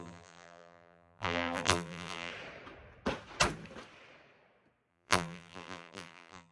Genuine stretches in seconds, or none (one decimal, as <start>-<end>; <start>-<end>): 2.3-4.9